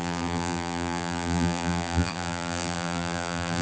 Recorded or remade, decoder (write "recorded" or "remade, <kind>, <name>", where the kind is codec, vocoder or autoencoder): remade, vocoder, BigVGAN v2